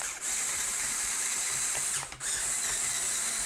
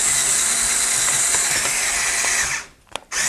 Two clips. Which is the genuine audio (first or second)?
second